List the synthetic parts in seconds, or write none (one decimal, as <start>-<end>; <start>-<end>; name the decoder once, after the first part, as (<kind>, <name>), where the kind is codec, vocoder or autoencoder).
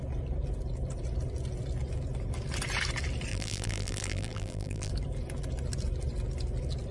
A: 3.3-4.9 (vocoder, BigVGAN v2)